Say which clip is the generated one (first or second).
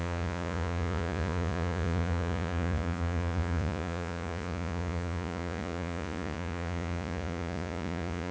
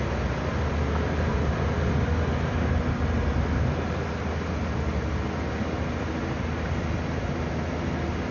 first